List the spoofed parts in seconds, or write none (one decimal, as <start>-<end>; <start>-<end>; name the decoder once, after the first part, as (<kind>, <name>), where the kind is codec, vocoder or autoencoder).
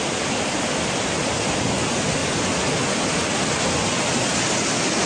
none